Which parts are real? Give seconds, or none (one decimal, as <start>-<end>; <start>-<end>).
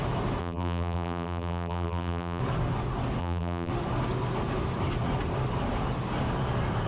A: 0.0-0.4; 2.4-3.2; 3.7-6.9